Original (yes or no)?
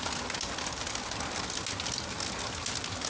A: yes